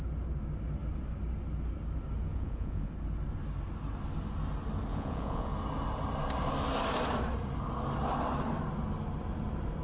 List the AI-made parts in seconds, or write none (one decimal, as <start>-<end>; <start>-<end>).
2.3-2.9; 4.9-5.5